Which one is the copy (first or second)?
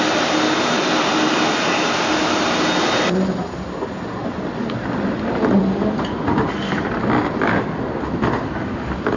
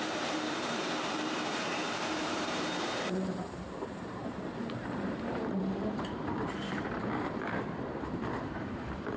second